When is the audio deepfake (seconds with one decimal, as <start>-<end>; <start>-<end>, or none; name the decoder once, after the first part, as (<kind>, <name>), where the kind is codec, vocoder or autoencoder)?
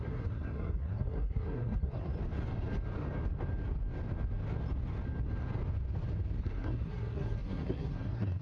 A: 0.0-2.1 (codec, SNAC); 6.4-8.4